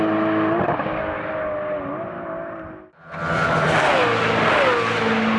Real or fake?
real